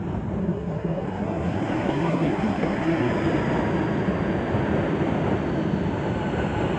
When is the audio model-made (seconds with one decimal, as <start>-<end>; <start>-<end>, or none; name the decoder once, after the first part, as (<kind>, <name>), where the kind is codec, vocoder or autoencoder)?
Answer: 0.4-3.1 (codec, SNAC)